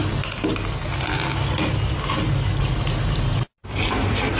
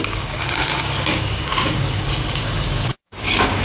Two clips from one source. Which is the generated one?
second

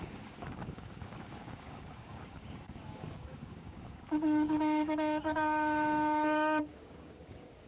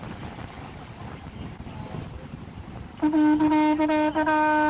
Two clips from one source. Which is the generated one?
first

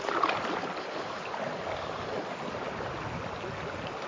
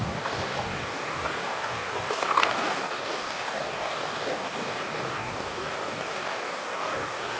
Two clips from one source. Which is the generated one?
second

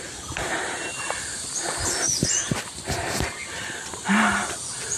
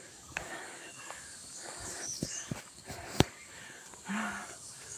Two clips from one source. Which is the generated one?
second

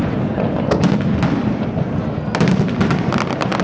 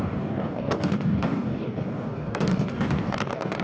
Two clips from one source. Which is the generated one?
second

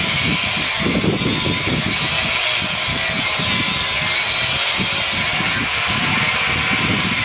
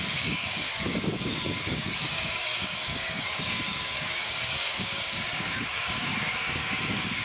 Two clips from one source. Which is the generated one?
second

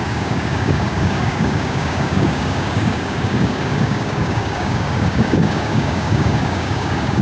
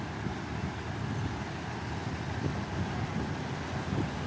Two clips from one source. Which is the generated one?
first